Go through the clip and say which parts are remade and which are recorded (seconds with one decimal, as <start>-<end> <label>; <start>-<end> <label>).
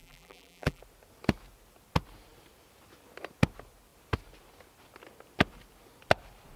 0.0-0.8 remade; 0.8-6.6 recorded